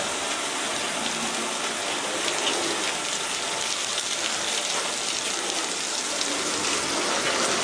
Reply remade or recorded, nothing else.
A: recorded